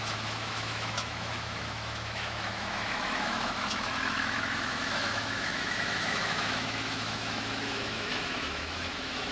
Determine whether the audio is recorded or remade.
remade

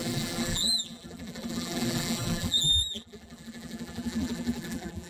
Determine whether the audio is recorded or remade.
remade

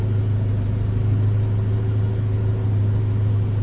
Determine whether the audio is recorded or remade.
recorded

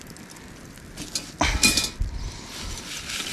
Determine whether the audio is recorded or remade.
recorded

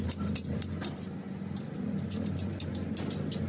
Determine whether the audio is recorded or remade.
recorded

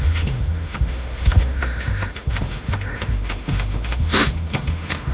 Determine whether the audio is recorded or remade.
remade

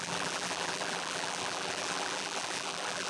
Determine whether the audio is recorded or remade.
remade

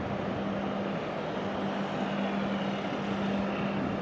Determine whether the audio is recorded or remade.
recorded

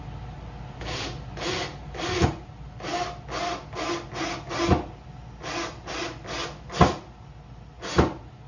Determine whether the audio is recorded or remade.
recorded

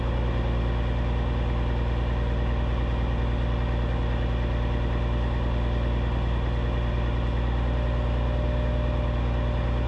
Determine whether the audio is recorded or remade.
recorded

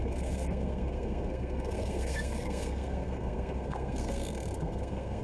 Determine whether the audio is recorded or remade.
remade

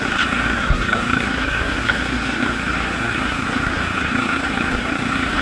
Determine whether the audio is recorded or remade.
remade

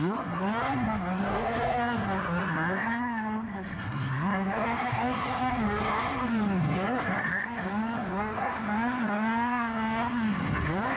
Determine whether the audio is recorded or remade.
remade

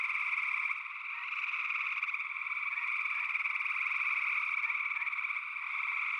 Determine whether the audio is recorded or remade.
recorded